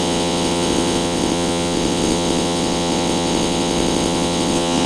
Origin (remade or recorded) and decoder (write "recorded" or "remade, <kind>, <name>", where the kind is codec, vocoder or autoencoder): remade, vocoder, WaveNeXt